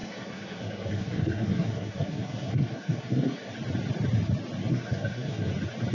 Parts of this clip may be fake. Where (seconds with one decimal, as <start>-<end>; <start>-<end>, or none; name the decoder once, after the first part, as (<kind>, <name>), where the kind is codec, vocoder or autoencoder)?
0.0-3.5 (codec, SNAC); 4.7-5.5